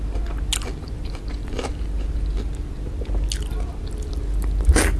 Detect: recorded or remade recorded